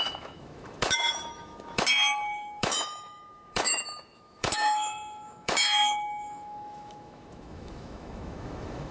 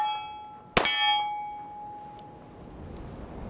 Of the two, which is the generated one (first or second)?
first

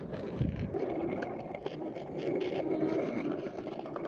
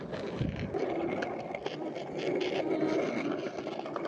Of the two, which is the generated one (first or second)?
first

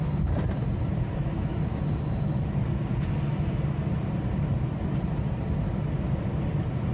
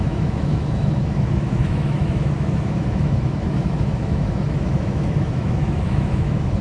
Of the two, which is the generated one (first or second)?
second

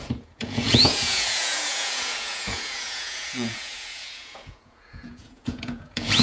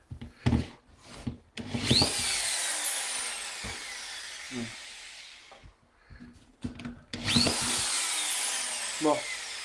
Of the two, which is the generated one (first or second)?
first